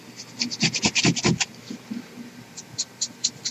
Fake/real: real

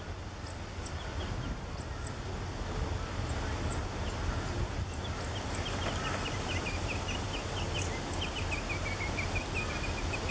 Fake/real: real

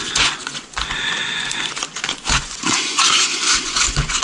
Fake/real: fake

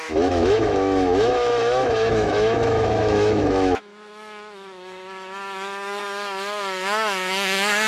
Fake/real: fake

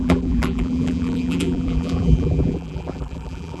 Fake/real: fake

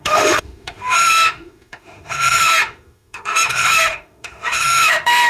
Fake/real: fake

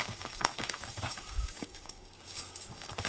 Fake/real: fake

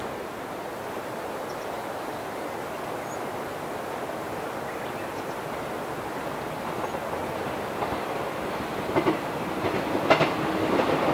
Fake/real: real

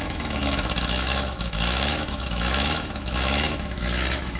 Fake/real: fake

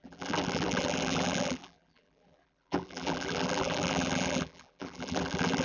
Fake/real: fake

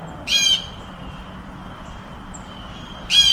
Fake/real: real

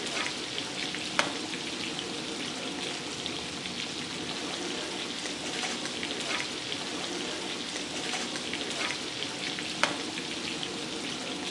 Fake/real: real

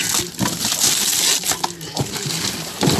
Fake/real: real